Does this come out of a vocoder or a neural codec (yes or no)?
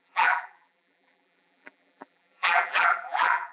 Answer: yes